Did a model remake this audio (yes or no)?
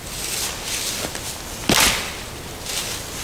no